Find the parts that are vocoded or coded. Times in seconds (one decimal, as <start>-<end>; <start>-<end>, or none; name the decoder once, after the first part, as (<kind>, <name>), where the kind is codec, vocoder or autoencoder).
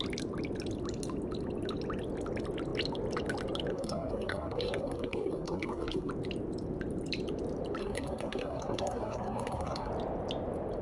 3.7-6.1 (codec, SNAC); 7.8-9.9